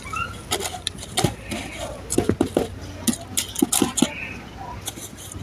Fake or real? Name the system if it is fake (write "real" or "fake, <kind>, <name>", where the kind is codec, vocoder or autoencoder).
real